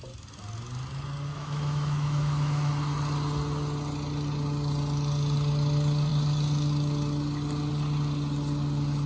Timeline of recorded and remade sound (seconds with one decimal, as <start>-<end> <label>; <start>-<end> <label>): 0.0-1.3 recorded; 1.3-2.7 remade; 2.7-9.1 recorded